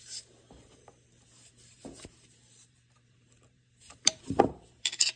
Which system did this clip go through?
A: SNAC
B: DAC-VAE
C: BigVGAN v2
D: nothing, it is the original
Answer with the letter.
C